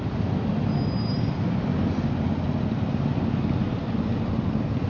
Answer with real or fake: real